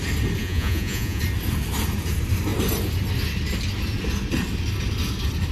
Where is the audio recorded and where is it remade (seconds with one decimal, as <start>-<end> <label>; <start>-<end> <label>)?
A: 0.0-0.4 recorded; 0.4-1.2 remade; 1.2-5.5 recorded